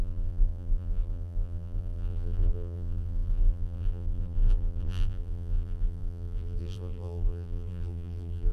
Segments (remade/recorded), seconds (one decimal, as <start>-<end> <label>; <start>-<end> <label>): 0.0-8.5 remade